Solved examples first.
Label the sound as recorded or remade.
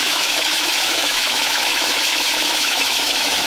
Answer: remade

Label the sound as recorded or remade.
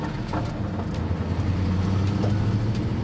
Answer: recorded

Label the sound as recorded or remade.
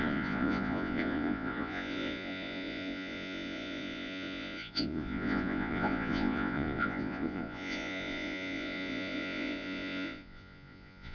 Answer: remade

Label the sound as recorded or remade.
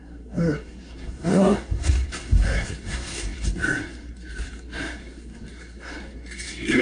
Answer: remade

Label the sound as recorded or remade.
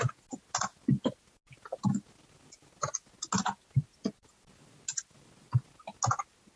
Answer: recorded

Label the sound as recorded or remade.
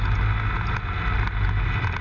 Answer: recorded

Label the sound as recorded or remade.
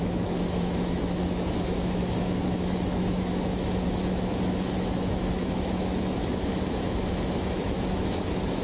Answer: remade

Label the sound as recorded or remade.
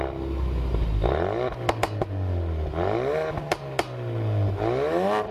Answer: recorded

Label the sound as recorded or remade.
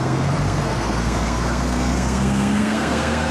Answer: remade